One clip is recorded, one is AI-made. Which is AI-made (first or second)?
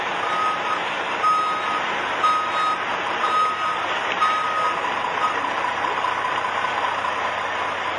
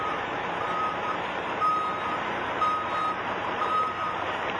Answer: second